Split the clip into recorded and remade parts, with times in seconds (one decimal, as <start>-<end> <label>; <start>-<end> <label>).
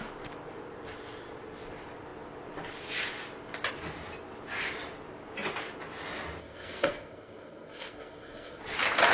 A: 0.0-6.4 recorded; 6.4-8.6 remade; 8.6-9.1 recorded